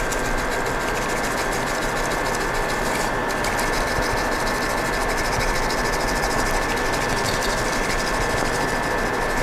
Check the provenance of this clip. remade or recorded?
recorded